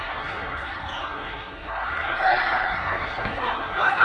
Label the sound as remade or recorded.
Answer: remade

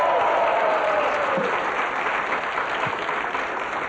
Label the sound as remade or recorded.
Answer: recorded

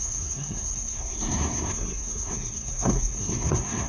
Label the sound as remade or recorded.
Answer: remade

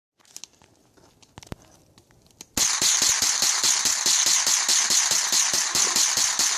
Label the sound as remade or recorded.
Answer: recorded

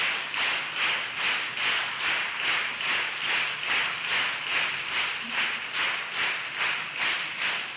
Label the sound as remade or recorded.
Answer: recorded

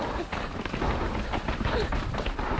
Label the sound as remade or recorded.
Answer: recorded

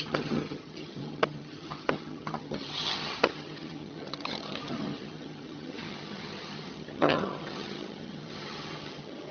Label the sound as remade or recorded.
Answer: remade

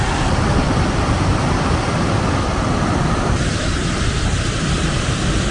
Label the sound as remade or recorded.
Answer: recorded